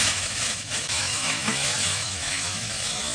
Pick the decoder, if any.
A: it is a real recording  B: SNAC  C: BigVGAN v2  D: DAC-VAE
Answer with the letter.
D